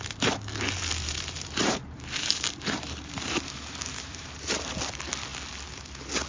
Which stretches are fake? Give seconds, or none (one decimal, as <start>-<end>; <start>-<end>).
1.0-4.8